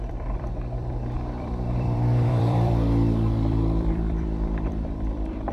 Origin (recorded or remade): remade